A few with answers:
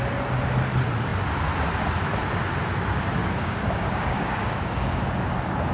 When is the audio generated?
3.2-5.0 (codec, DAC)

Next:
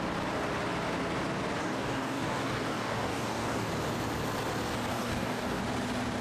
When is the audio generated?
1.6-3.7 (codec, DAC); 4.9-5.6

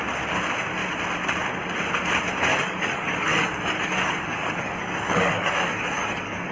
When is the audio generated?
2.5-6.5 (codec, DAC)

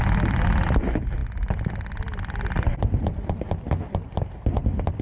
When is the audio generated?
none

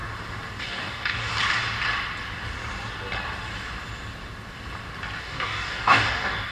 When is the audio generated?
0.6-1.3 (codec, DAC); 5.2-6.5

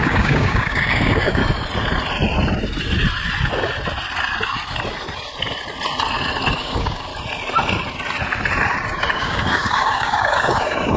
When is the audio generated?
0.0-1.4 (codec, DAC); 6.6-7.1; 9.1-11.0